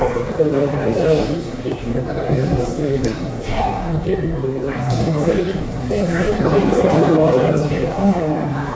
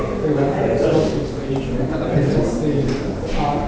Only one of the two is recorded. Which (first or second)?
second